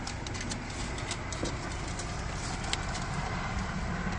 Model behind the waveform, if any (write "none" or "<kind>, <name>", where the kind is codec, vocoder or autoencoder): none